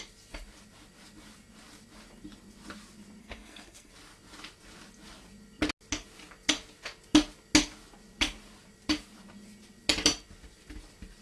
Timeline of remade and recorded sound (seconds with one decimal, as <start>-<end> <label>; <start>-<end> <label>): 0.0-3.2 recorded; 3.2-3.9 remade; 3.9-11.2 recorded